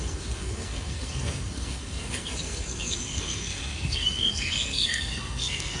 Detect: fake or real fake